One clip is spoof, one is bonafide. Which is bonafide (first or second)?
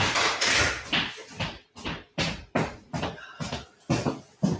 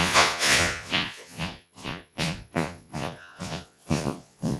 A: first